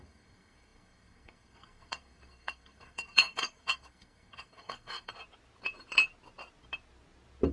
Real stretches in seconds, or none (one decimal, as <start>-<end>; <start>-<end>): 5.1-7.5